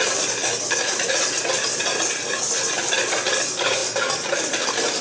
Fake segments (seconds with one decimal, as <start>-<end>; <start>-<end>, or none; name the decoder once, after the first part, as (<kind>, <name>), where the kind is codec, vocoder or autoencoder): none